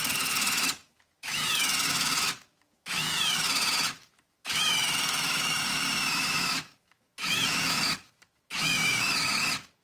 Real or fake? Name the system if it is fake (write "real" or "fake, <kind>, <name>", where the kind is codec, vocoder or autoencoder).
fake, autoencoder, DAC-VAE